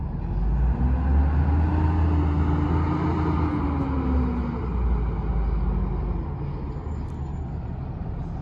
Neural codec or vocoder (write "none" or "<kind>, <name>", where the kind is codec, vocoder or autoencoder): none